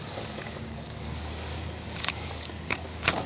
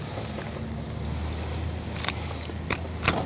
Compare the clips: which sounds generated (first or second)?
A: first